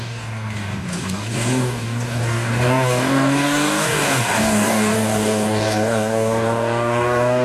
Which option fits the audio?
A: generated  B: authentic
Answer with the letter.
A